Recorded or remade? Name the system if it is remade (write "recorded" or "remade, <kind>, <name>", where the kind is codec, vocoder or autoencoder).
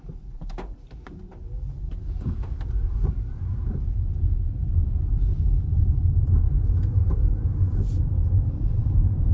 remade, vocoder, BigVGAN v2